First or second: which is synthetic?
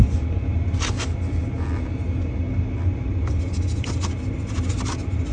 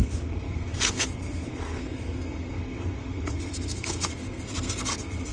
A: second